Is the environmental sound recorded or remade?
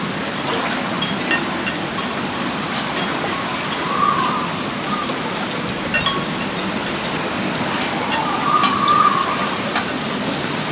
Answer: recorded